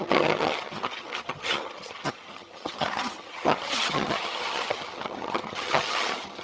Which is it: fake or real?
fake